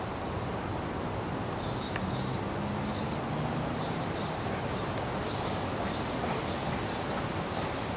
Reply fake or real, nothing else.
real